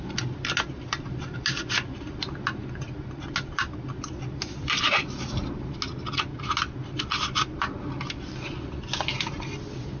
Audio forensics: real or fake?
real